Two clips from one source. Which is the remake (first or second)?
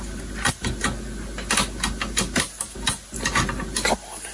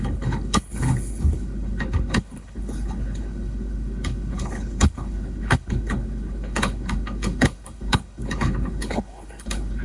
second